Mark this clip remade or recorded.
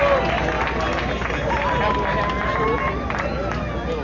recorded